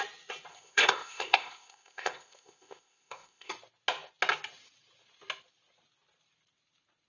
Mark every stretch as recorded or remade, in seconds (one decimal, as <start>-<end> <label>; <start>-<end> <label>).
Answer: 0.0-0.5 recorded; 0.5-3.5 remade; 3.5-7.1 recorded